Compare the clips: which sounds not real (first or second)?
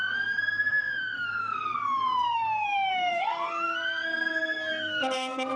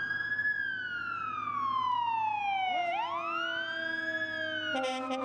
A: first